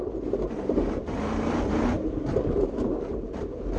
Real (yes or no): no